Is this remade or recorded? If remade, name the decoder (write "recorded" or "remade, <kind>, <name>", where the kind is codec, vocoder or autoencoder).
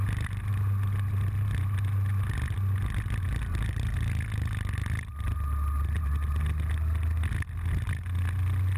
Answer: recorded